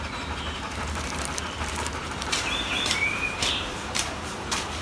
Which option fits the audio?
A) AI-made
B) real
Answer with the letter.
A